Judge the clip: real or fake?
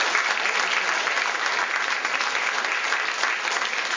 real